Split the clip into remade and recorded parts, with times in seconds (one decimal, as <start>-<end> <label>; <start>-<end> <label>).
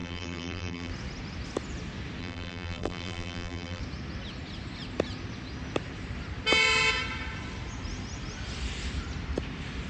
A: 0.0-0.9 remade; 0.9-2.2 recorded; 2.2-3.8 remade; 3.8-9.9 recorded